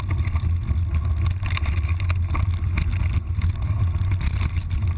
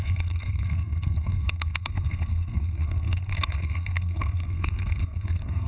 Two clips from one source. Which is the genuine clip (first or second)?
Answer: first